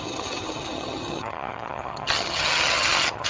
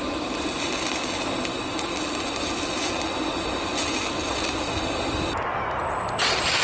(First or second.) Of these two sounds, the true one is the second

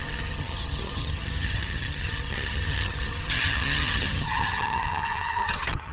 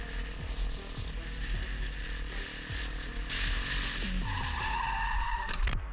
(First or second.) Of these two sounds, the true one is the second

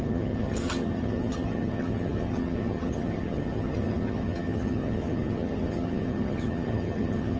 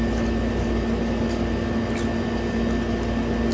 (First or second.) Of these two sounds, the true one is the second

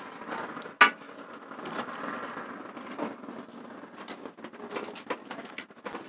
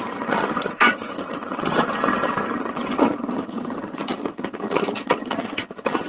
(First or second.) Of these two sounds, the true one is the first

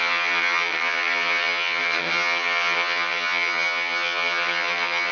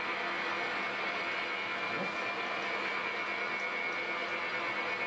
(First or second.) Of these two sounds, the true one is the second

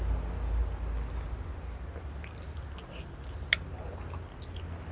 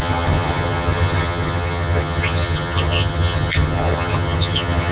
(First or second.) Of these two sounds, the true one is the first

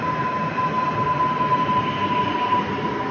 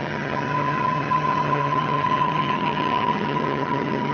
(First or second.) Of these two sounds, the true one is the first